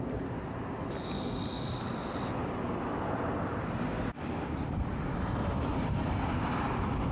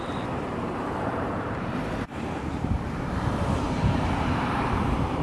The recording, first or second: first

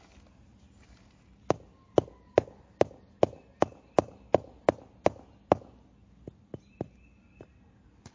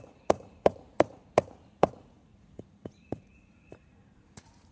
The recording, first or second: first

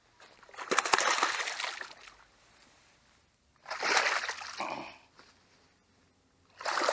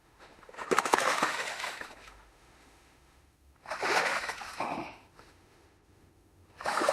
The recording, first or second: first